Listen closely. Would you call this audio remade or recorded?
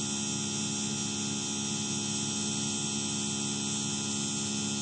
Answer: recorded